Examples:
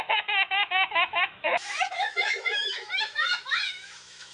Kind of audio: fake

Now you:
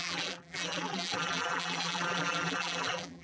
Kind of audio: fake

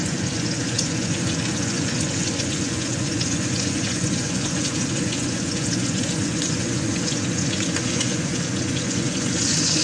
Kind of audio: fake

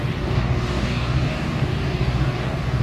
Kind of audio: fake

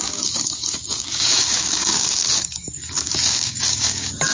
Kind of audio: fake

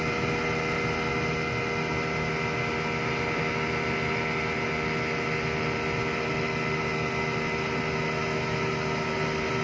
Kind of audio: real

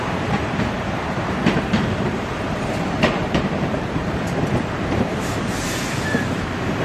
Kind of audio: fake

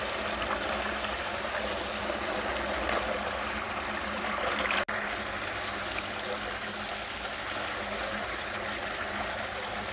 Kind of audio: real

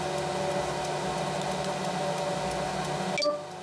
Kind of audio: real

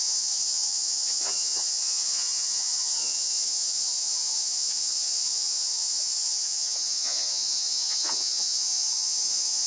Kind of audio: fake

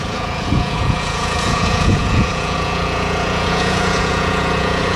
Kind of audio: fake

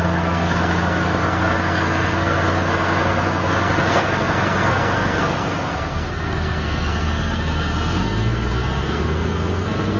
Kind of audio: fake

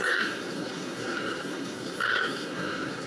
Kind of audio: fake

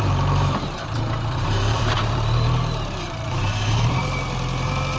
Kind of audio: fake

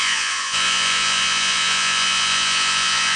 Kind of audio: fake